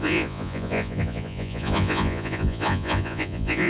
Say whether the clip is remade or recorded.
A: remade